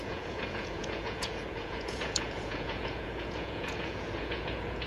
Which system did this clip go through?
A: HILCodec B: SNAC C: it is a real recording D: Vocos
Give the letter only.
D